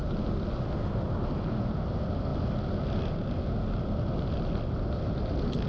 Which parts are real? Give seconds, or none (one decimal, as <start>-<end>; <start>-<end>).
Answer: 0.0-5.7